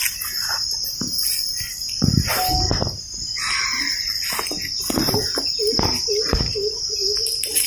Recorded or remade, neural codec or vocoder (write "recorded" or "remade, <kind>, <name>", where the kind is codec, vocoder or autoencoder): recorded